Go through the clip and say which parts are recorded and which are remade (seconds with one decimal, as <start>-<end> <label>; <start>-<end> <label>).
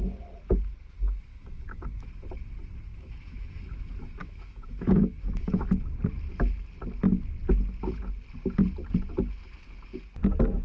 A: 0.0-1.3 recorded; 1.3-1.8 remade; 1.8-2.9 recorded; 2.9-3.6 remade; 3.6-4.2 recorded; 4.2-5.6 remade; 5.6-10.6 recorded